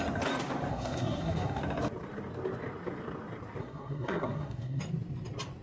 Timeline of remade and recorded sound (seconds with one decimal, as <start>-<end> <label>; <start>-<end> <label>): 0.0-0.7 recorded; 0.7-1.6 remade; 1.6-3.6 recorded; 3.6-4.8 remade; 4.8-5.6 recorded